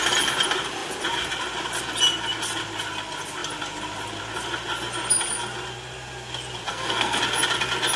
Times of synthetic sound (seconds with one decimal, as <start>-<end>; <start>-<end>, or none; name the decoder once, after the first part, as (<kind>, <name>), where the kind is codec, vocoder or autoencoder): 6.7-7.2 (codec, SNAC)